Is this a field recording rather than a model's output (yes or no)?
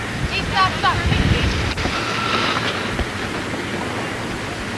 yes